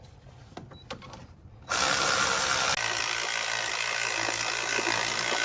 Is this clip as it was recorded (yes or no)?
yes